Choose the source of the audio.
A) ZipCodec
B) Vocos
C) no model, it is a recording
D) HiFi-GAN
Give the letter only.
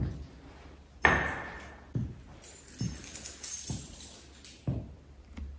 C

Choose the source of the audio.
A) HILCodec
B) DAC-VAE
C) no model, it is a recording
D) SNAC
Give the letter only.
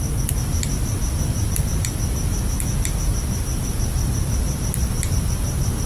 C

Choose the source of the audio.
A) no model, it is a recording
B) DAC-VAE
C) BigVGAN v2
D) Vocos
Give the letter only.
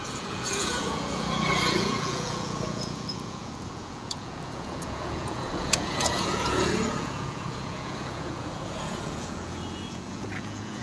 D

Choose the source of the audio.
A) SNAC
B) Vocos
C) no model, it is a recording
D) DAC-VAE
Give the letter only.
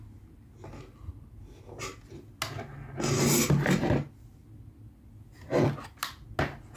C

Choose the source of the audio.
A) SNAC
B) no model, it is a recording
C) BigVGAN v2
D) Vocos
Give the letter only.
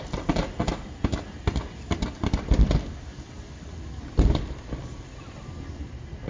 B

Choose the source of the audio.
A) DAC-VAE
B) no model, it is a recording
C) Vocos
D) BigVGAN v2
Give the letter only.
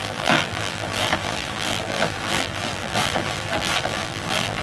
D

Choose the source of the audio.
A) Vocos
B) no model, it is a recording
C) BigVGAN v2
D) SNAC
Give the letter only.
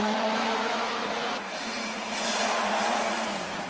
A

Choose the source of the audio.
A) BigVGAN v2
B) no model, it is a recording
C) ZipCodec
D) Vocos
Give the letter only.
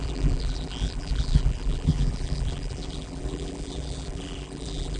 A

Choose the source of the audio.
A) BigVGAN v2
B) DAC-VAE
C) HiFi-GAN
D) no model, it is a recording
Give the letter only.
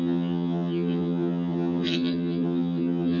C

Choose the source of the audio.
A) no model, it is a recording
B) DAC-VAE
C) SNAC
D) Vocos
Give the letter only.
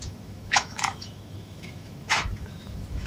B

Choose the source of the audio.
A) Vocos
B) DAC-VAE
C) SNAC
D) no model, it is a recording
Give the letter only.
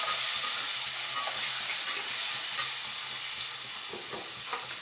D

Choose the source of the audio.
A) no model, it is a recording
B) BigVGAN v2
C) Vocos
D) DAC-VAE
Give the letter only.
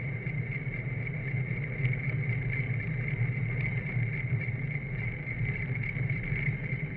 A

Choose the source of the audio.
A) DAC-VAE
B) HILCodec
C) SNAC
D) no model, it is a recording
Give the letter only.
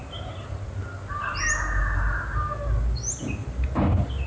D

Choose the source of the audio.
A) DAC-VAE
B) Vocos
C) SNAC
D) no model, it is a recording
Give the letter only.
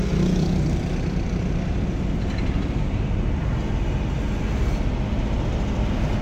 D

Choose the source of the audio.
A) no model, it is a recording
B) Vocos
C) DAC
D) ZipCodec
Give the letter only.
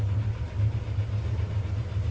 A